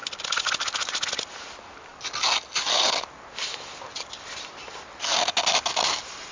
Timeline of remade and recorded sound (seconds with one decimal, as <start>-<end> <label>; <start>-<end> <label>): 0.0-6.3 recorded